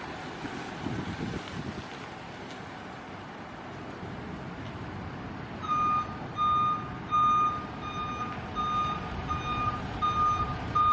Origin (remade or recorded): recorded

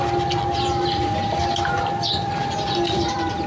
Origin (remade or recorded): recorded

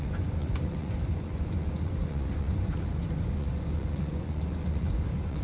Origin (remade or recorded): remade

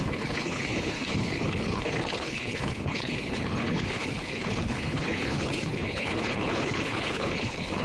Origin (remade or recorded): remade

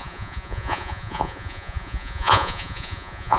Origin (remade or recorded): remade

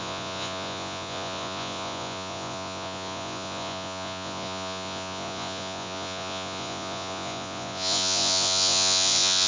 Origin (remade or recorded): remade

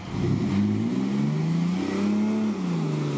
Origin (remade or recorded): recorded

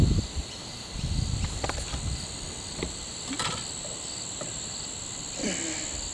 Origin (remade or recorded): recorded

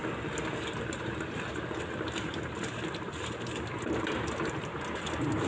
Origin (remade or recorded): recorded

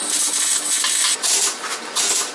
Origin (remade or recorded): recorded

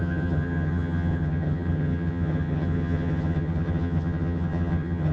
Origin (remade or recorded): remade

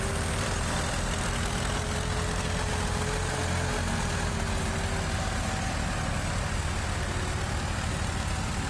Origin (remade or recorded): recorded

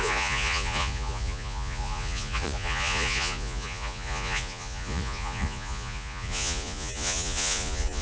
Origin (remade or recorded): remade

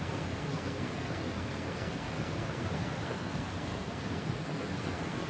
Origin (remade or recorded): remade